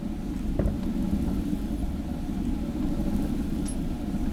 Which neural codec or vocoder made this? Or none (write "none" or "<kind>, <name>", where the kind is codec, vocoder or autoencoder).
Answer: none